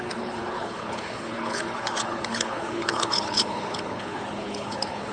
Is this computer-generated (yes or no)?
yes